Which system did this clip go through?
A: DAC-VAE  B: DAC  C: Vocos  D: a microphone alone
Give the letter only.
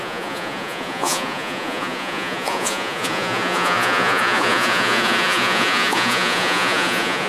C